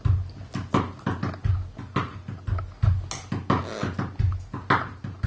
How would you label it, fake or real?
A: real